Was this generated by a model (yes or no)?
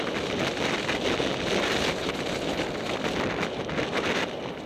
no